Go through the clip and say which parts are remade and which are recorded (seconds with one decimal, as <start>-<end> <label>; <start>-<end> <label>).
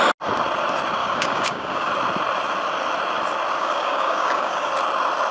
0.0-1.0 recorded; 1.0-1.9 remade; 1.9-3.6 recorded; 3.6-4.7 remade; 4.7-5.3 recorded